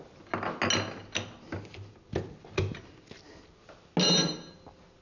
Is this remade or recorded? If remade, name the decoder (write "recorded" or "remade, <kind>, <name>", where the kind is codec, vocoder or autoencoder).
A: recorded